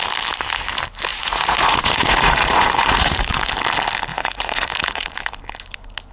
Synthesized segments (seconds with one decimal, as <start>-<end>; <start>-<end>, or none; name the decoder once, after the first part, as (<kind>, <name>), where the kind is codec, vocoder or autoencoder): 1.1-3.5 (vocoder, Vocos); 4.1-5.3